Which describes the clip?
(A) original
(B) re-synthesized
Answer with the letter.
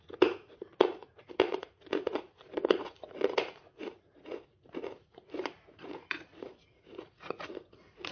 B